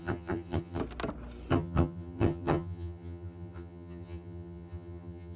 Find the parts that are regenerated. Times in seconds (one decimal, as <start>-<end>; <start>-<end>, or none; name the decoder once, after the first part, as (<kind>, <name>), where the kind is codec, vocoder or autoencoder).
0.0-0.8 (vocoder, HiFi-GAN); 1.5-5.4